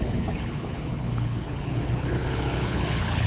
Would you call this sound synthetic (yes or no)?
yes